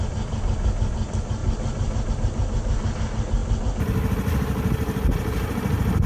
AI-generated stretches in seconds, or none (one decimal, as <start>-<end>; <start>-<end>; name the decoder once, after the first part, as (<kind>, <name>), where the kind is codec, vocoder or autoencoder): none